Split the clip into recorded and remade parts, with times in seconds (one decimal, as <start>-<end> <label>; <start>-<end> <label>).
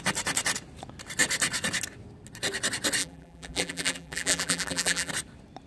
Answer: 0.0-3.0 recorded; 3.0-5.1 remade; 5.1-5.7 recorded